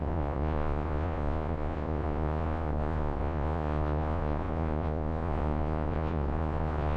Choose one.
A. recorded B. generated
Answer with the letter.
B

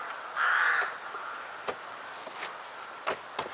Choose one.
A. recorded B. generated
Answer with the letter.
A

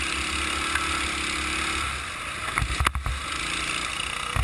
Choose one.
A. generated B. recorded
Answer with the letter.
B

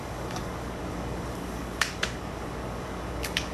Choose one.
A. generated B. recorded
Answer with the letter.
A